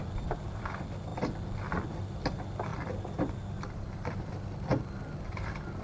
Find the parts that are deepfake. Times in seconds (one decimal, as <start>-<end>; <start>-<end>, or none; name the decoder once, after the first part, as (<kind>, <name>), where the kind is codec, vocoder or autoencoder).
0.0-1.1 (vocoder, BigVGAN v2); 1.9-4.7